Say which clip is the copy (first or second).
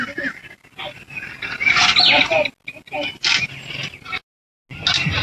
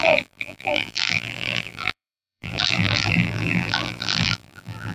second